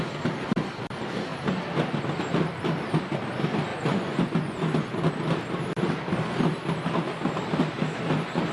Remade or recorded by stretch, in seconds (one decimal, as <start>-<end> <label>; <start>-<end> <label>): 0.0-3.7 recorded; 3.7-5.1 remade; 5.1-8.5 recorded